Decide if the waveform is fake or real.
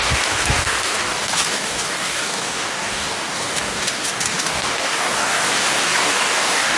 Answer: fake